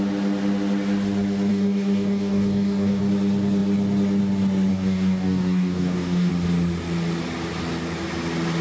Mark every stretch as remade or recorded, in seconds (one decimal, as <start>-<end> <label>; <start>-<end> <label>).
0.0-1.5 recorded; 1.5-3.0 remade; 3.0-4.7 recorded; 4.7-6.3 remade; 6.3-8.6 recorded